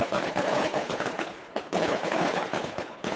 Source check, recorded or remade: remade